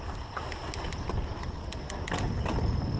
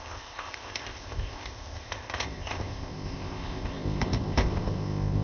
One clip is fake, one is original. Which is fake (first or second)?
second